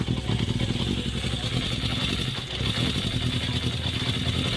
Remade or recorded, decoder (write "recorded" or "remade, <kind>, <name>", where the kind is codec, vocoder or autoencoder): recorded